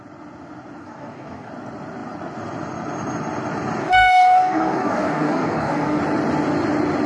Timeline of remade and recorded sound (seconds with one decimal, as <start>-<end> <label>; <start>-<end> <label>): 0.0-0.8 recorded; 0.8-1.5 remade; 1.5-3.8 recorded; 3.8-6.0 remade; 6.0-7.1 recorded

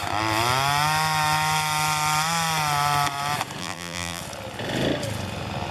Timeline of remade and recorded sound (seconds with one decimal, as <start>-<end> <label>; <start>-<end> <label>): 0.0-3.6 recorded; 3.6-4.2 remade; 4.2-5.7 recorded